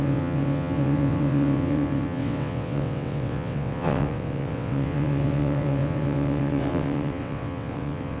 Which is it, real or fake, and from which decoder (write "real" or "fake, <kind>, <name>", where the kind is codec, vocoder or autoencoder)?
fake, vocoder, WaveNeXt